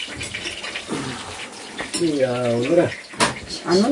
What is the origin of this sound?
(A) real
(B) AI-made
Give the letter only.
A